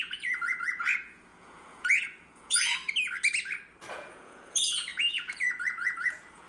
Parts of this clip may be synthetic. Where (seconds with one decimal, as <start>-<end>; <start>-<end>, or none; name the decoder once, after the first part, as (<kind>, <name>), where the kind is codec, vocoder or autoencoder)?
0.0-2.8 (vocoder, Vocos); 3.9-6.5